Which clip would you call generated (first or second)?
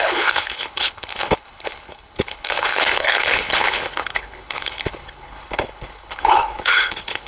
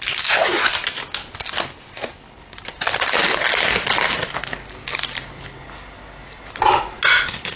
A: first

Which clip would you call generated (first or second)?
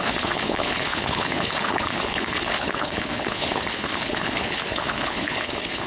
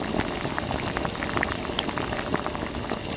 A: first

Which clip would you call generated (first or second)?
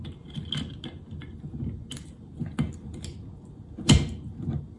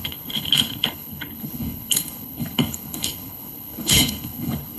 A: second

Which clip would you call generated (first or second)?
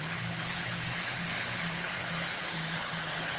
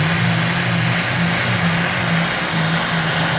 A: first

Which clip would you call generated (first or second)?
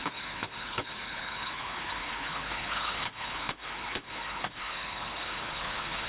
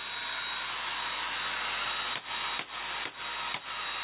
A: first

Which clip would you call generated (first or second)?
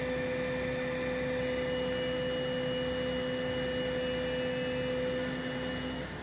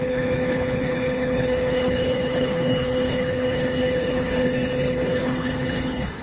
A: second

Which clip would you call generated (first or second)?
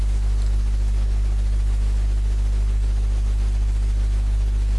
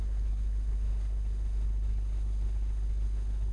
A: second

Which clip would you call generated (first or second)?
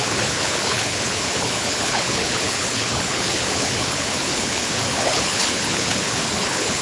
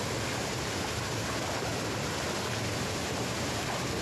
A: first